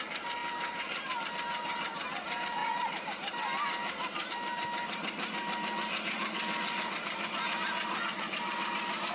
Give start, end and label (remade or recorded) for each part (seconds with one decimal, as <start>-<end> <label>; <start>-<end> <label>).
0.0-9.1 recorded